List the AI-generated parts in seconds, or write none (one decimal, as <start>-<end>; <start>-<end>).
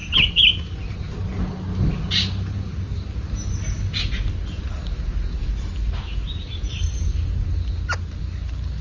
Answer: none